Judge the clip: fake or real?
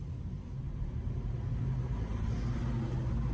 real